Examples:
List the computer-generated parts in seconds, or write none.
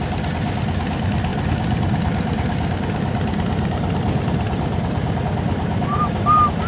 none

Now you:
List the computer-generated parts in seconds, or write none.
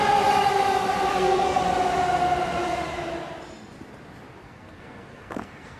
1.1-1.6; 4.4-5.8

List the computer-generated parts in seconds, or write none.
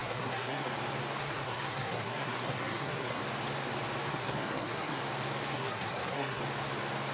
0.0-0.7; 1.2-3.2; 4.1-5.0; 5.5-6.4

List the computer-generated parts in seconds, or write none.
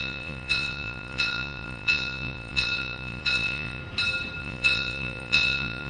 0.0-3.8; 4.4-5.9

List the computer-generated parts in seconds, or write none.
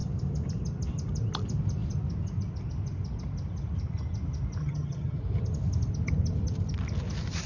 4.6-5.2